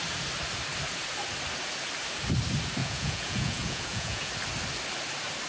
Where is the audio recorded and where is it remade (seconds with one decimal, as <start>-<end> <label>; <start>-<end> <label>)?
0.0-2.8 recorded; 2.8-4.3 remade; 4.3-5.5 recorded